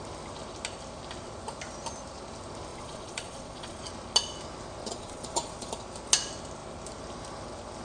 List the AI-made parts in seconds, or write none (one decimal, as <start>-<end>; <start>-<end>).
2.7-3.8; 4.8-5.7